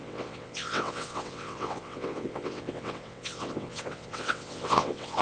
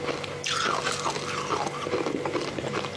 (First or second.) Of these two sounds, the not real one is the first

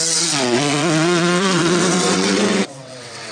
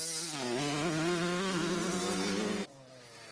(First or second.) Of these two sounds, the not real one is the first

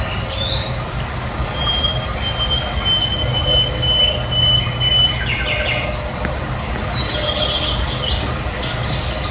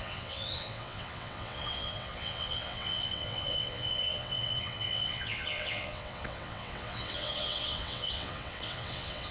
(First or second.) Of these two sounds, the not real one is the second